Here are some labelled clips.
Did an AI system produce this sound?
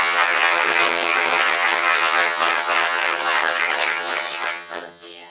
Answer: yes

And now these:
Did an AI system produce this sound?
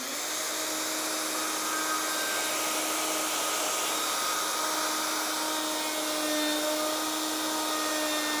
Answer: no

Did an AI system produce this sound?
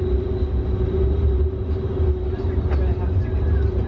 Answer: no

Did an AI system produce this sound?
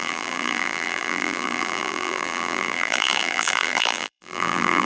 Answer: yes